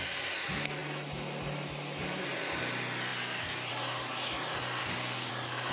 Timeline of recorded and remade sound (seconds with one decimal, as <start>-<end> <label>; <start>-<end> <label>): 0.0-4.8 recorded; 4.8-5.3 remade; 5.3-5.7 recorded